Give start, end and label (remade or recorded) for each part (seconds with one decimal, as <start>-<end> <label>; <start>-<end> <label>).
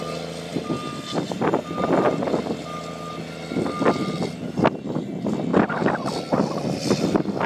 0.0-7.5 recorded